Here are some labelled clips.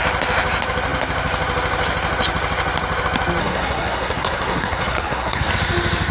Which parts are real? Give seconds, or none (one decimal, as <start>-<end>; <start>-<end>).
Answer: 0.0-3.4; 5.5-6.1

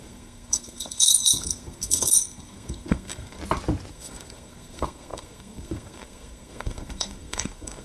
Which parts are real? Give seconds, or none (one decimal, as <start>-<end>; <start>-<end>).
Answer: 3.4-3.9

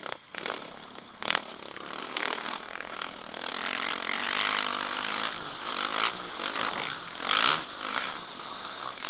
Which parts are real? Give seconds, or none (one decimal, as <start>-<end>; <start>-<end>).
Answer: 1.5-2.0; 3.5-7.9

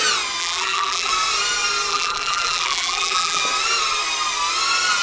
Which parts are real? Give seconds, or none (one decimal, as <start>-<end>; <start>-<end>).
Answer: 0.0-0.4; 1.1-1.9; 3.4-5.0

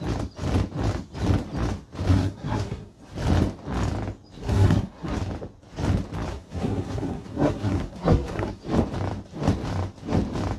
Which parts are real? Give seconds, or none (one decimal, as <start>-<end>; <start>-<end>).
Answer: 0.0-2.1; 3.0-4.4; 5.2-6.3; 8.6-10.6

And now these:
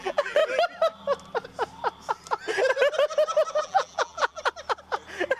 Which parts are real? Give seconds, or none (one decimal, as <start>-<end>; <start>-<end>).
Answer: 0.4-3.6; 4.4-5.4